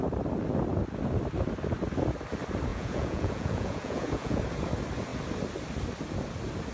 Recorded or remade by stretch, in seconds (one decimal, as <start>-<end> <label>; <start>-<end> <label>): 0.0-2.7 recorded; 2.7-4.4 remade; 4.4-6.7 recorded